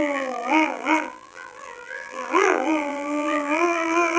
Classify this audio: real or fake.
fake